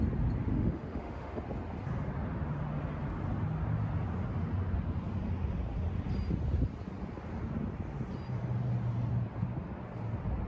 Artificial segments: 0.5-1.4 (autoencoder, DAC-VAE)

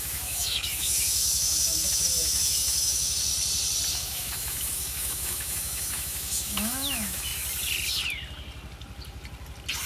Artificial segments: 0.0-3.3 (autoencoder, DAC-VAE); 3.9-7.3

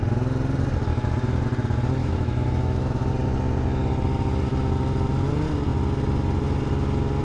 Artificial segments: 2.0-3.1 (autoencoder, DAC-VAE)